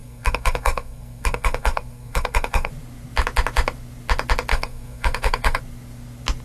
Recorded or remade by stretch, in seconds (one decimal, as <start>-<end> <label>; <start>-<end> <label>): 0.0-2.7 remade; 2.7-4.5 recorded; 4.5-5.6 remade; 5.6-6.4 recorded